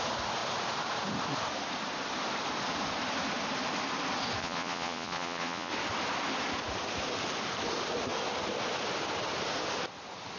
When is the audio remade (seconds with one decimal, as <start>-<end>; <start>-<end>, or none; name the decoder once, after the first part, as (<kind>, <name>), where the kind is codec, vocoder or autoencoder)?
4.4-5.7 (vocoder, Vocos)